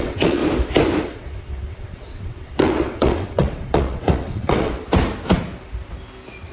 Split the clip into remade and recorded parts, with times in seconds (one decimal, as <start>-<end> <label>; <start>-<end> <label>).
0.0-0.4 remade; 0.4-1.0 recorded; 1.0-4.8 remade; 4.8-6.5 recorded